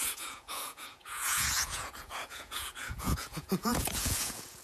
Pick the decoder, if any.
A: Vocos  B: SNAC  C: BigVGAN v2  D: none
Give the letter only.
A